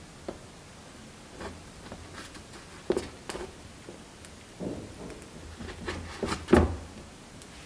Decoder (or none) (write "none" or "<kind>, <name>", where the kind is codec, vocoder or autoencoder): none